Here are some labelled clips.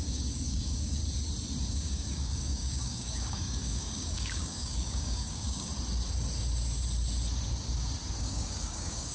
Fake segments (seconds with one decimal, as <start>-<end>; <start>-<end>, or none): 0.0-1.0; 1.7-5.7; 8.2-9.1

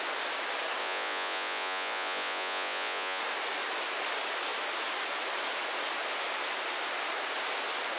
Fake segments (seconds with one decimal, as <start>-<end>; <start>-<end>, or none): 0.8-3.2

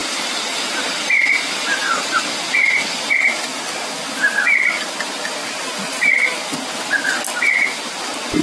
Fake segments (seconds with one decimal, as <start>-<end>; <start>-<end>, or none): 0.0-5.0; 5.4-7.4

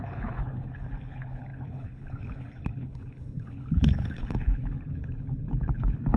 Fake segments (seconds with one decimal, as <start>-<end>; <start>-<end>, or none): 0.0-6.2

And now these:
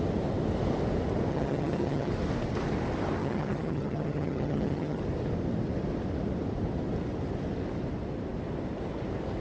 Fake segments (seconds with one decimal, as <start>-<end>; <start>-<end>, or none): 1.3-2.1; 3.2-5.0